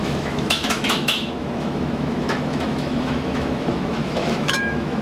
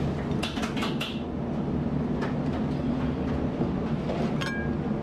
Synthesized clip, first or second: first